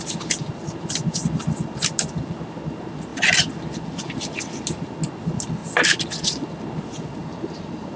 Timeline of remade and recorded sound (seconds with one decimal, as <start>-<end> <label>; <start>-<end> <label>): 0.0-7.2 recorded; 7.2-8.0 remade